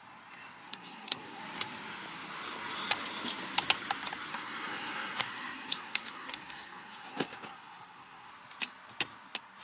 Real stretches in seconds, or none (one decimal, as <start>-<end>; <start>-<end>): 0.0-0.7; 1.4-4.3; 8.3-9.6